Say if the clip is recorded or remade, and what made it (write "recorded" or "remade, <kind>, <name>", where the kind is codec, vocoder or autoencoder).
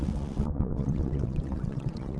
remade, vocoder, WaveNeXt